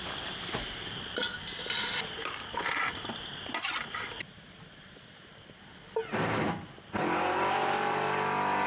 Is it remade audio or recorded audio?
recorded